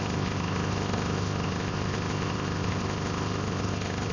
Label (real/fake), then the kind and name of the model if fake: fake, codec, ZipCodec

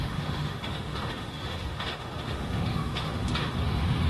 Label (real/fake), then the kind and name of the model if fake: fake, autoencoder, DAC-VAE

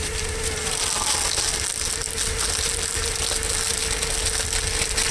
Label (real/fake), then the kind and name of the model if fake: real